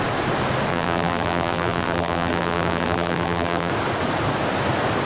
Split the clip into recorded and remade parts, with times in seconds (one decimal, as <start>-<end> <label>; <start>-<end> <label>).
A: 0.0-0.7 recorded; 0.7-3.7 remade; 3.7-5.0 recorded